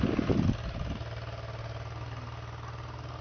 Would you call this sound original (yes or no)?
yes